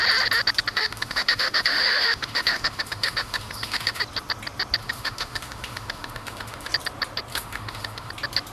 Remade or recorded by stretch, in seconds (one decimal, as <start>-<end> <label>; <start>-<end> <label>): 0.0-0.7 recorded; 0.7-4.0 remade; 4.0-4.8 recorded; 4.8-6.7 remade; 6.7-7.3 recorded; 7.3-8.1 remade; 8.1-8.5 recorded